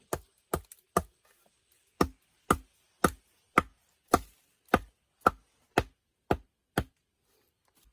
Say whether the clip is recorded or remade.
recorded